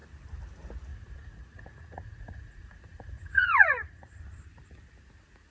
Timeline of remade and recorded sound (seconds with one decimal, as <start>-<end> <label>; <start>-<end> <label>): 0.0-0.9 recorded; 0.9-4.2 remade; 4.2-5.5 recorded